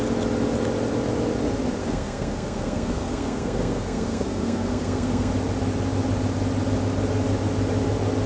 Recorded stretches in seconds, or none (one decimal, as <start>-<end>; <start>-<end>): 0.0-1.8; 5.3-8.3